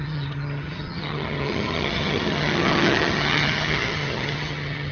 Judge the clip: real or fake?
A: fake